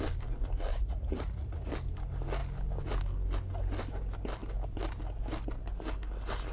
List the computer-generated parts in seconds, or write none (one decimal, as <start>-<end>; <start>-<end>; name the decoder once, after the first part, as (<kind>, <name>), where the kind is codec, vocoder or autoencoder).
0.7-1.7 (vocoder, Vocos)